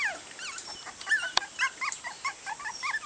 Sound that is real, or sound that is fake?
real